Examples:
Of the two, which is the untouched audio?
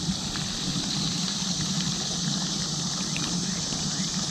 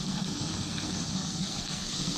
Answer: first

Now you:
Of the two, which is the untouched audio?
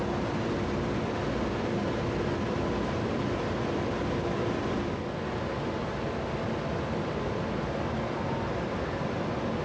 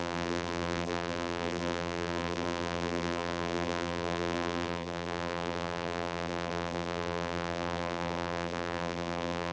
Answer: first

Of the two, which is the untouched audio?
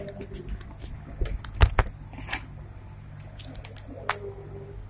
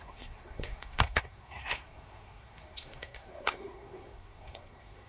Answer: first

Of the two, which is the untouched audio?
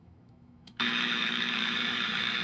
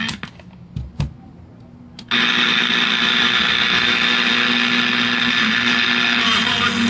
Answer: second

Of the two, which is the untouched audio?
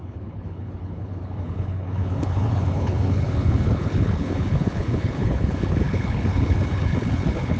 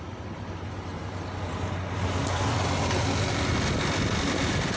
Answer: second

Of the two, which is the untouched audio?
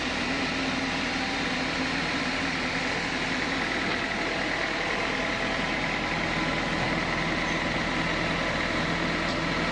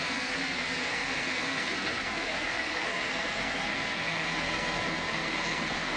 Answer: first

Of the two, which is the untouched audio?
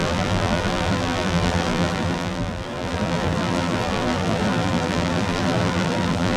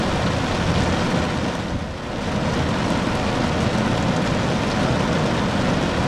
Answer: second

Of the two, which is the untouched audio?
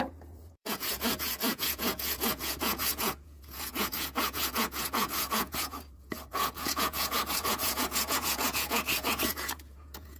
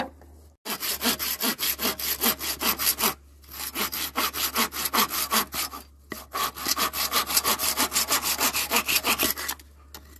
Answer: second